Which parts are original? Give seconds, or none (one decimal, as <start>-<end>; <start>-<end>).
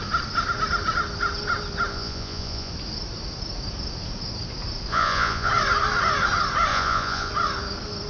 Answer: 0.0-1.9; 2.7-4.9; 5.5-6.7; 7.3-8.1